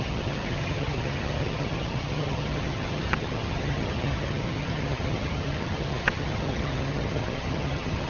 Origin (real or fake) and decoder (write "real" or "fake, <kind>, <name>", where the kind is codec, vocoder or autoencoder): fake, vocoder, HiFi-GAN